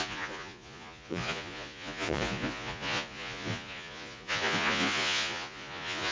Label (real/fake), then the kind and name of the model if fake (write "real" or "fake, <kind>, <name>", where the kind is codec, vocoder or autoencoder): fake, vocoder, Vocos